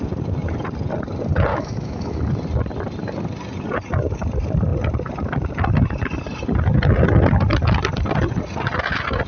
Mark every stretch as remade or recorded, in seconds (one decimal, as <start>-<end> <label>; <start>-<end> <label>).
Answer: 0.0-1.5 recorded; 1.5-2.2 remade; 2.2-9.3 recorded